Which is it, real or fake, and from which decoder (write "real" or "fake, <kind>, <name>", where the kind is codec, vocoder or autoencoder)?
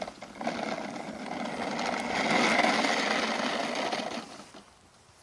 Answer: real